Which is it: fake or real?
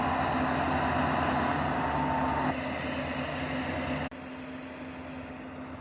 real